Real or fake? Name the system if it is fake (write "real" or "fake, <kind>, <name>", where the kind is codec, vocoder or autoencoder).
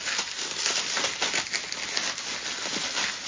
real